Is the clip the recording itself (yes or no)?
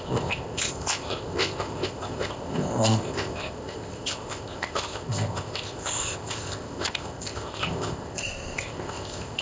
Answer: no